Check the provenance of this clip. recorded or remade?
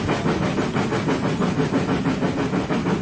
recorded